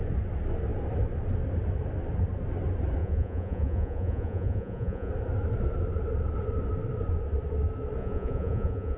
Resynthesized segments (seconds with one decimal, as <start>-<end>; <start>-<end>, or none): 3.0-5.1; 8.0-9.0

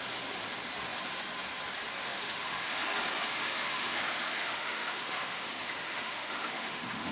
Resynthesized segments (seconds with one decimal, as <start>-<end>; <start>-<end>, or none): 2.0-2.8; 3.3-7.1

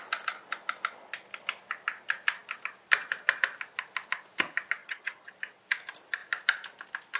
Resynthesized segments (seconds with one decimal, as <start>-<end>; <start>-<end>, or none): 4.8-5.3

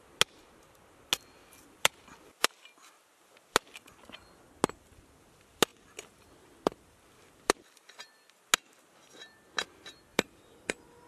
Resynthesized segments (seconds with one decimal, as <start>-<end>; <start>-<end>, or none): 1.4-2.6; 5.7-8.1; 10.1-10.7

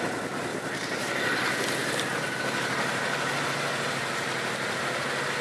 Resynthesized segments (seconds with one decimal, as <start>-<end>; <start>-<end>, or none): 0.5-1.1

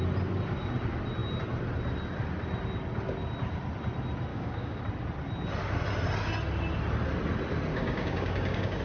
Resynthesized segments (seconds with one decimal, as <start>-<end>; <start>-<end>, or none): 4.3-4.8; 7.7-8.8

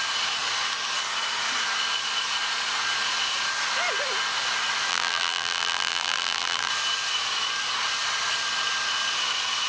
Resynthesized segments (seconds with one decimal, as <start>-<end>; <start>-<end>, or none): 4.9-6.7